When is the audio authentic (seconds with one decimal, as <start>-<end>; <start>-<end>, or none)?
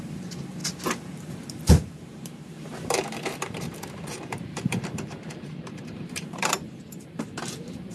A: 0.6-1.2